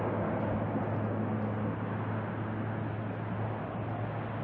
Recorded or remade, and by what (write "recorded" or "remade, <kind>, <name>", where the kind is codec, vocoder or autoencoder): recorded